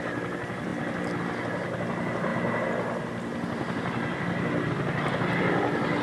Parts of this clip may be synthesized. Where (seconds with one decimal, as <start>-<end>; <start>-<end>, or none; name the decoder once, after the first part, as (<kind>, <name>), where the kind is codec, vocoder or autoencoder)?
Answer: none